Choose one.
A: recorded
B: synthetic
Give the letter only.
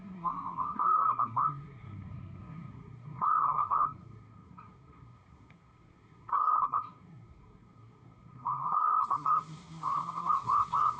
B